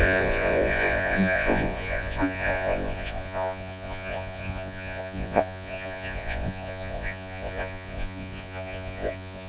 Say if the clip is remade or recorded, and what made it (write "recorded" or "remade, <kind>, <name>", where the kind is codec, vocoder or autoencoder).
remade, vocoder, Vocos